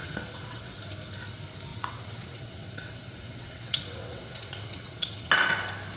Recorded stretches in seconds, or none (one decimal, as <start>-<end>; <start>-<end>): 0.8-1.7; 5.3-6.0

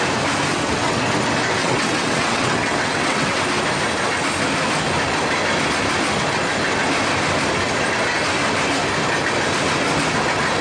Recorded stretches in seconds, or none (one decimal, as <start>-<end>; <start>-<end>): 0.0-0.5; 1.0-1.6; 3.4-10.6